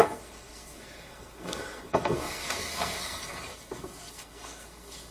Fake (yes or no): yes